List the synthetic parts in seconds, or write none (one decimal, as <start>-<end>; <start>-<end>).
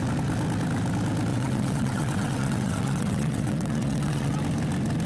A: 1.3-4.4